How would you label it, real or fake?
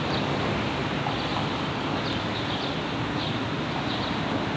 real